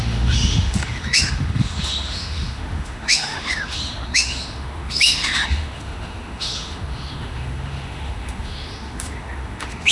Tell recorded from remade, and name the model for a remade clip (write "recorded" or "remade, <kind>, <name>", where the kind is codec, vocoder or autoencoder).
remade, autoencoder, DAC-VAE